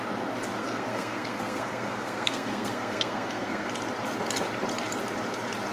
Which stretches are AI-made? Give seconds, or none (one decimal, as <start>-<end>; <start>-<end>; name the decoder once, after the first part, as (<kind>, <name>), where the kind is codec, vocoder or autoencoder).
0.6-3.7 (codec, SNAC)